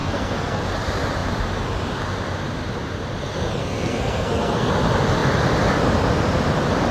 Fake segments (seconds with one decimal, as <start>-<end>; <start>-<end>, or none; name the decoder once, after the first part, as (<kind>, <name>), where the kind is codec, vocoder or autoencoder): 0.0-0.6 (codec, SNAC); 3.6-4.7